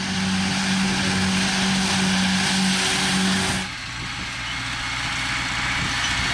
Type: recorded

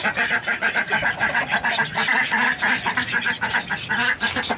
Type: recorded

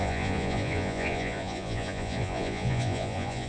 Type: remade